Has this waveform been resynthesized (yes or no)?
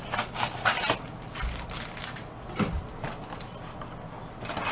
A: no